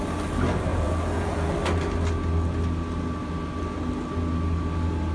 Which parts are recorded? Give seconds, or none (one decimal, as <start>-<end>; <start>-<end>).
0.0-0.7; 1.5-5.1